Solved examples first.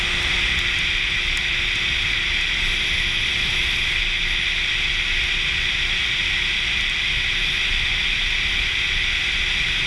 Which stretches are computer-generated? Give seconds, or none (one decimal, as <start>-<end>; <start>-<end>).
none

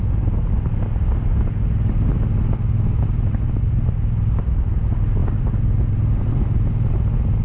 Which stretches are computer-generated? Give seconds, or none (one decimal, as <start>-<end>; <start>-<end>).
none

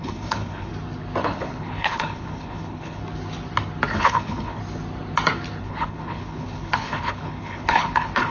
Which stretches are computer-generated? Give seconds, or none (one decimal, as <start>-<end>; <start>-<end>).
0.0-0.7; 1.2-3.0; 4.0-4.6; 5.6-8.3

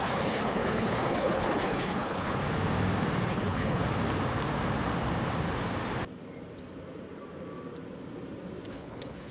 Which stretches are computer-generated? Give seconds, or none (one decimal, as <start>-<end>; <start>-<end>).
0.0-2.4; 3.3-3.8; 8.7-9.3